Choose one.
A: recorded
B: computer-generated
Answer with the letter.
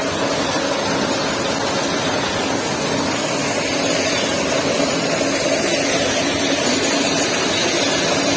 A